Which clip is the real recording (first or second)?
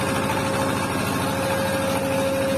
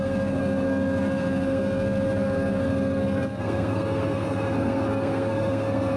first